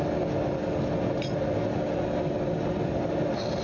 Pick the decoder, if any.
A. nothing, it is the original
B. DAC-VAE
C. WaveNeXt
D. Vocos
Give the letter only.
A